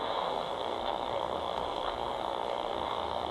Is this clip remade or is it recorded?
remade